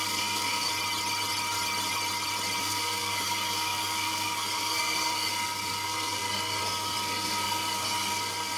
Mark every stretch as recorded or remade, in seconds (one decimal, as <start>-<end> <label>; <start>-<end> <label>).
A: 0.0-0.7 remade; 0.7-2.6 recorded; 2.6-8.6 remade